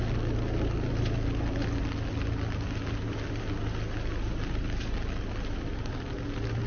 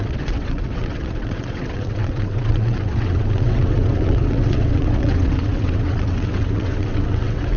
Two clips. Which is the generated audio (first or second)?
second